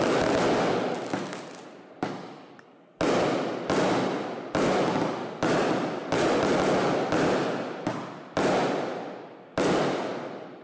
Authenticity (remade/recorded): recorded